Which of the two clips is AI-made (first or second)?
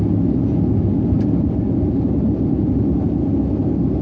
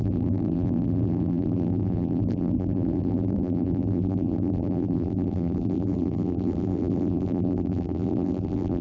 second